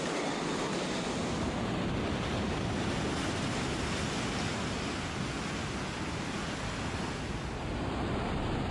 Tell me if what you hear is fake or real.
real